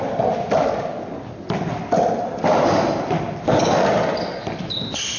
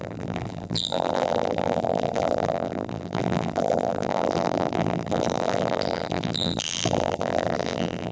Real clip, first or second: first